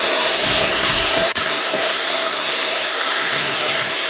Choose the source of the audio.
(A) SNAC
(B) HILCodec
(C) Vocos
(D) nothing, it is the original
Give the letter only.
A